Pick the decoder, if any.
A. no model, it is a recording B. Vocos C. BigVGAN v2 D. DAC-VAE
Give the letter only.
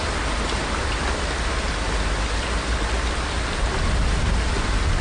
A